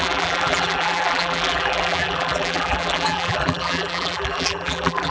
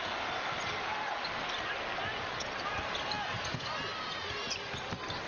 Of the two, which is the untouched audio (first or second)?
second